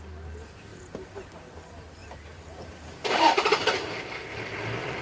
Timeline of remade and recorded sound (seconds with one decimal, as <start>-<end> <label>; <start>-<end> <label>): 0.0-2.0 recorded; 2.0-4.1 remade; 4.1-5.0 recorded